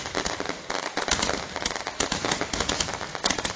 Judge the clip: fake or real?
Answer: real